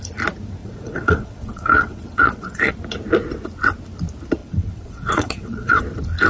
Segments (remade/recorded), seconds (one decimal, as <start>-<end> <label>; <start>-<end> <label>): 0.0-0.6 recorded; 0.6-2.7 remade; 2.7-4.4 recorded; 4.4-5.8 remade; 5.8-6.3 recorded